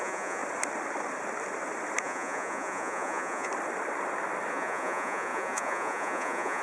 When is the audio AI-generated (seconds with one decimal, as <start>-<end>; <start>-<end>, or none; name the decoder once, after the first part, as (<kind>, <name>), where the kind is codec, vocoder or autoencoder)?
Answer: 0.0-0.4 (vocoder, Vocos); 2.0-3.5; 4.5-6.6